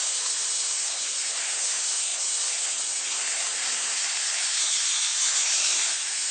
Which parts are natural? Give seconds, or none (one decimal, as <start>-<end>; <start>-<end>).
none